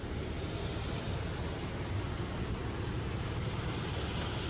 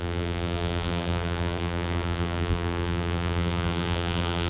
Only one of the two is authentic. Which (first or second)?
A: first